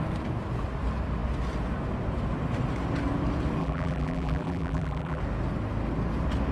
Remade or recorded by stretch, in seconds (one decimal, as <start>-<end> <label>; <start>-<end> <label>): 0.0-3.6 recorded; 3.6-5.2 remade; 5.2-6.5 recorded